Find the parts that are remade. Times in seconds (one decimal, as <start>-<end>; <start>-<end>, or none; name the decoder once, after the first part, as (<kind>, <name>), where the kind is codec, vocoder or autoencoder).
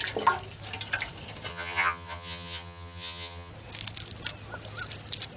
1.5-3.5 (vocoder, HiFi-GAN)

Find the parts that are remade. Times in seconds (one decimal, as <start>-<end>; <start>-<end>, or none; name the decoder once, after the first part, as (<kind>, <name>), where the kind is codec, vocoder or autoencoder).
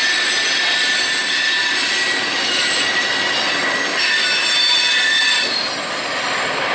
none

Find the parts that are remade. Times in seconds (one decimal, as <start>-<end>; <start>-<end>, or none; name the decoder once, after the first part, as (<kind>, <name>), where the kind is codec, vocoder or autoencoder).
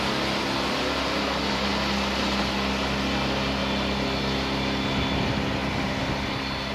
none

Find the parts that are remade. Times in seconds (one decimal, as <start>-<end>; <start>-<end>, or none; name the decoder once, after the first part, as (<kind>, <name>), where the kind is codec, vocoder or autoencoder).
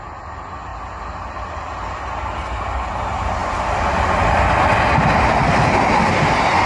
none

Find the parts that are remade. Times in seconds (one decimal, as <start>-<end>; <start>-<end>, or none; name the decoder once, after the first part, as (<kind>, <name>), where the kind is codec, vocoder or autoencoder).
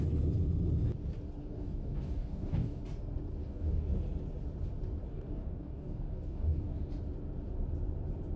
1.4-2.8 (codec, DAC); 3.4-4.0; 5.1-6.9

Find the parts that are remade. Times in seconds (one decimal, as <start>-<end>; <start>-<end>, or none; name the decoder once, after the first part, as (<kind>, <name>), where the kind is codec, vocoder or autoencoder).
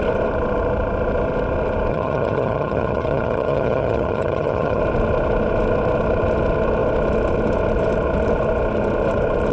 1.9-4.8 (vocoder, HiFi-GAN)